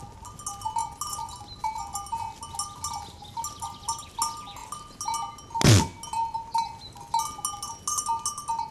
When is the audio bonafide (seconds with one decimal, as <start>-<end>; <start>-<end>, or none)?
0.0-8.7